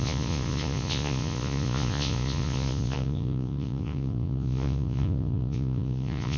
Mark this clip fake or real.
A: fake